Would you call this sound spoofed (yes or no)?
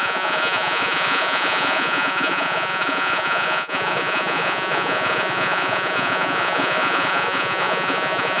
yes